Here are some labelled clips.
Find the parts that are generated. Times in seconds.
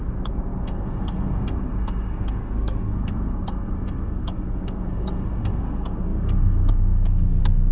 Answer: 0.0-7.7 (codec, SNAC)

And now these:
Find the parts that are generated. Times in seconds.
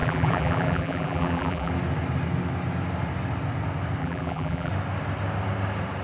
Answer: 0.0-1.7 (vocoder, BigVGAN v2); 4.0-4.7